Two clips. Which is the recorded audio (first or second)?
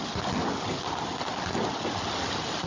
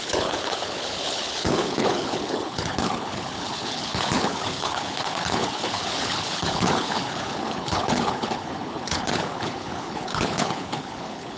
first